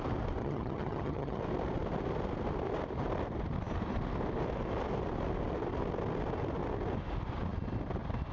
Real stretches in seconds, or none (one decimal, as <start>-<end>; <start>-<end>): 0.0-0.4; 1.4-8.3